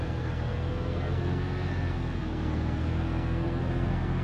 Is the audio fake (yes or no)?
yes